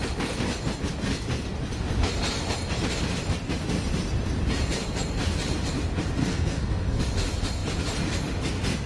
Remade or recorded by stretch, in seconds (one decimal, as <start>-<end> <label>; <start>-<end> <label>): 0.0-6.2 recorded; 6.2-7.0 remade; 7.0-8.9 recorded